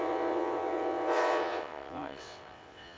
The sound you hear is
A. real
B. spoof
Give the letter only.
B